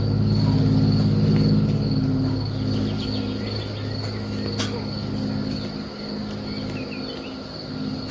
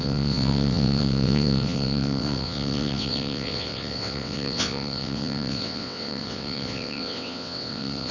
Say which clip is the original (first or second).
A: first